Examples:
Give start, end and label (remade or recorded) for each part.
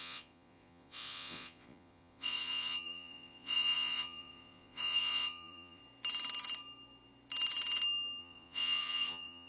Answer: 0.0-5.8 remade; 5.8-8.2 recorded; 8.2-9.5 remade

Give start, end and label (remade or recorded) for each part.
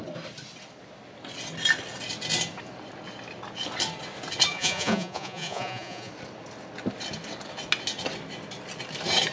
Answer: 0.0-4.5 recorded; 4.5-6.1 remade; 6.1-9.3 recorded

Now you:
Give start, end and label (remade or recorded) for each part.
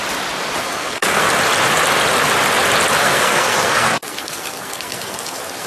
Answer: 0.0-0.6 recorded; 0.6-1.3 remade; 1.3-3.0 recorded; 3.0-5.7 remade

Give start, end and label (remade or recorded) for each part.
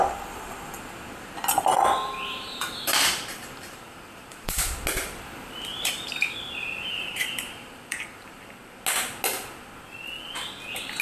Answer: 0.0-1.7 recorded; 1.7-4.6 remade; 4.6-5.7 recorded; 5.7-8.5 remade; 8.5-11.0 recorded